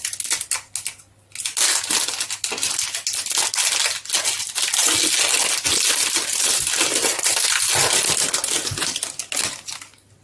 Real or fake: real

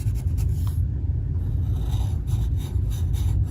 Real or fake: real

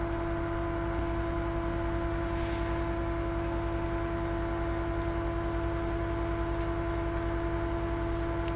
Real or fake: real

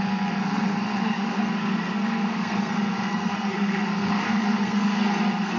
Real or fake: fake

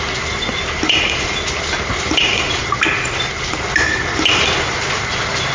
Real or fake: real